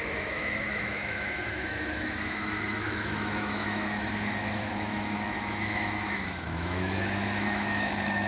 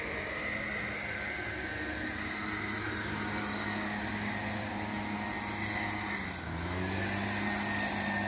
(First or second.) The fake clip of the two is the first